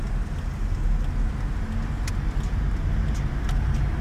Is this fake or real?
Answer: real